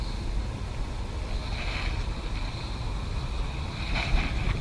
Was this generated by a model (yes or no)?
no